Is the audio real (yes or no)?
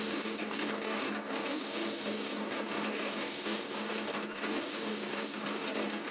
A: no